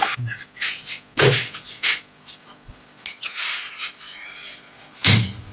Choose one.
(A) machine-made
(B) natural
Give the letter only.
B